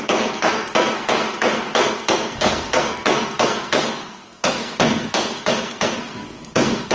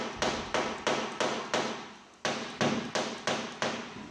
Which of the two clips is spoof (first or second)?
first